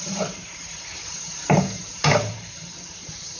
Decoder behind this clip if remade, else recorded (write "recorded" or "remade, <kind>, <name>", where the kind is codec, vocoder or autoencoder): remade, vocoder, BigVGAN v2